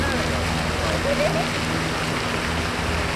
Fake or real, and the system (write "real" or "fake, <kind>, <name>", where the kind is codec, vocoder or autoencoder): real